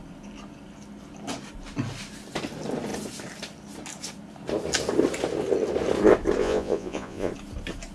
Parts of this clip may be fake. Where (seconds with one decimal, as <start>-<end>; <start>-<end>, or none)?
6.4-7.3

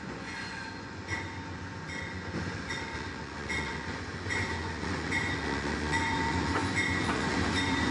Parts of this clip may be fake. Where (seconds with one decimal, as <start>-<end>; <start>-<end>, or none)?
0.0-7.9

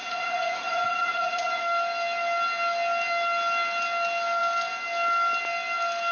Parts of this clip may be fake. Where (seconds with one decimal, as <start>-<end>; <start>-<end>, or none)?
0.0-1.6

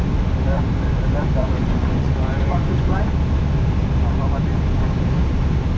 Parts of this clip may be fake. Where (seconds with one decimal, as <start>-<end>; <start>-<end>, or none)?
1.4-3.0

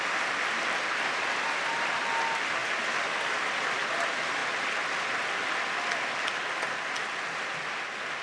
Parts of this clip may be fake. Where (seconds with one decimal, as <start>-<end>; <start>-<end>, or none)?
none

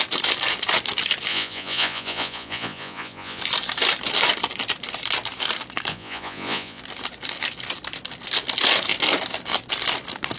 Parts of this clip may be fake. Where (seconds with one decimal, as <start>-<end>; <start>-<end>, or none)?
1.3-3.4; 5.9-6.8

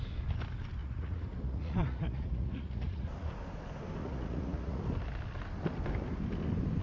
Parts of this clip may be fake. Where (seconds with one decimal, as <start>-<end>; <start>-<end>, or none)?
0.8-3.3; 4.0-4.8